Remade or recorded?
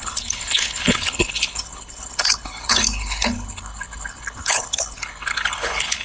remade